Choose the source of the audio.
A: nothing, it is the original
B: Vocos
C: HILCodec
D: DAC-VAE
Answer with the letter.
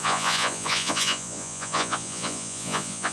B